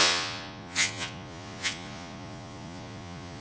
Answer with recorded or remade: remade